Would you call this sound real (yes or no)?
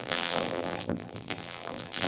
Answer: no